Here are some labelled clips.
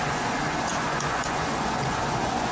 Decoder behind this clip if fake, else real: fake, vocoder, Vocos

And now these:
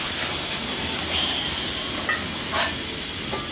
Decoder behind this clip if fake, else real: real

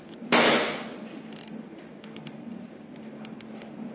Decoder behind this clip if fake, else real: real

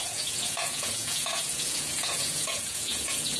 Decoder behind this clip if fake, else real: fake, vocoder, Vocos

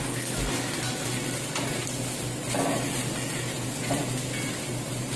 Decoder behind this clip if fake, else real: real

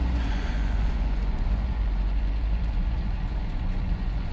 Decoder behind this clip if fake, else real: fake, vocoder, Vocos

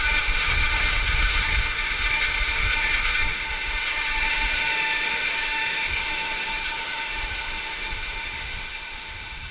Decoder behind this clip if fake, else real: fake, autoencoder, DAC-VAE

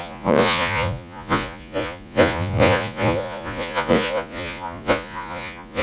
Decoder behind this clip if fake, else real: fake, vocoder, Vocos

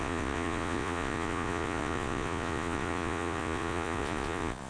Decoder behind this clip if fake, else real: fake, vocoder, Vocos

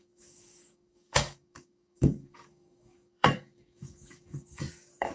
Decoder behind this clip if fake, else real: fake, codec, DAC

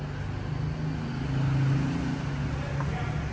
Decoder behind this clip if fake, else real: real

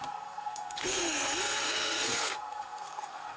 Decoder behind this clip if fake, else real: fake, codec, SNAC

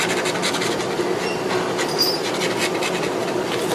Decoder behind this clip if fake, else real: real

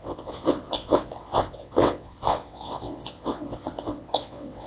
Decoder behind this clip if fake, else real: fake, vocoder, WaveNeXt